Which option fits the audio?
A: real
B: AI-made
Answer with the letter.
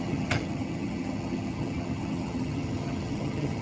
B